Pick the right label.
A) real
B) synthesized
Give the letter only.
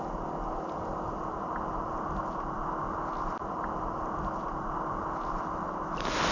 A